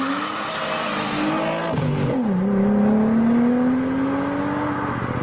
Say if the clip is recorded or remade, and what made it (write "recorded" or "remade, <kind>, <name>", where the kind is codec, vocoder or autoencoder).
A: recorded